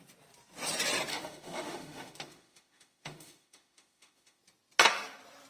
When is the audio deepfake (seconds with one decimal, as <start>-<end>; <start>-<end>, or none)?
1.1-4.4